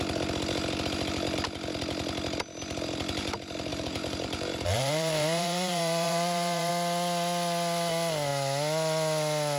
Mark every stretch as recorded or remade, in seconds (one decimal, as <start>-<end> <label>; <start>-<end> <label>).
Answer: 0.0-3.7 recorded; 3.7-6.7 remade; 6.7-9.6 recorded